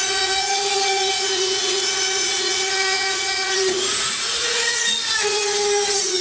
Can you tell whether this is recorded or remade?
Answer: remade